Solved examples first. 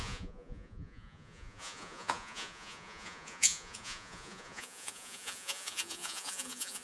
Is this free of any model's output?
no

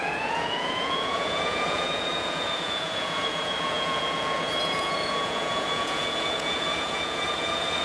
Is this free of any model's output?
no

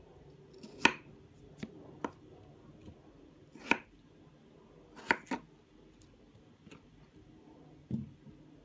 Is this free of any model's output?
yes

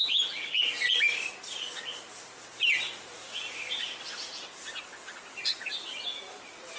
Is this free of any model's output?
yes